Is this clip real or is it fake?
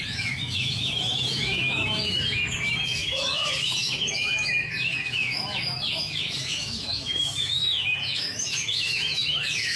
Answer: fake